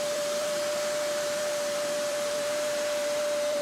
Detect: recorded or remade remade